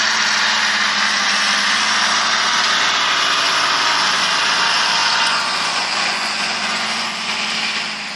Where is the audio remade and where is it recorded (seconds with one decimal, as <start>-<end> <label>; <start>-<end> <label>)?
0.0-5.0 recorded; 5.0-7.5 remade; 7.5-8.2 recorded